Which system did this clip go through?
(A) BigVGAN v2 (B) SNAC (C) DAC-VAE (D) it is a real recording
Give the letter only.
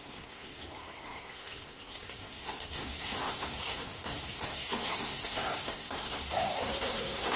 B